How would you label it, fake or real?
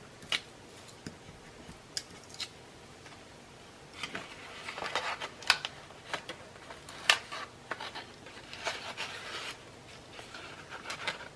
real